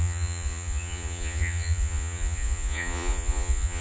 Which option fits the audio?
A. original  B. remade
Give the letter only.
B